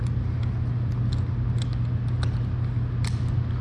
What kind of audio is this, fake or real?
real